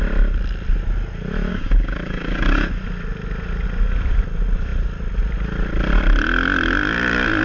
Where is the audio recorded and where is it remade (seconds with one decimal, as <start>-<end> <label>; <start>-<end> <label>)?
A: 0.0-1.5 recorded; 1.5-2.7 remade; 2.7-7.4 recorded